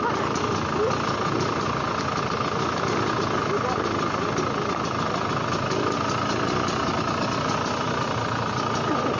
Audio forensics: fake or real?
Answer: real